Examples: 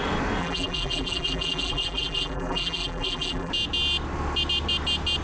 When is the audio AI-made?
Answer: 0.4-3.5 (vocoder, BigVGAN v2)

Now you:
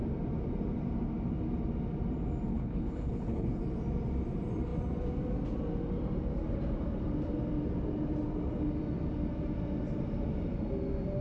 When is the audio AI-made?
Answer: 2.5-3.6 (codec, HILCodec)